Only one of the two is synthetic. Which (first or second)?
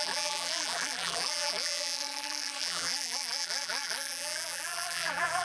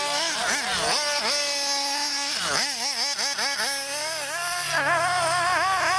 first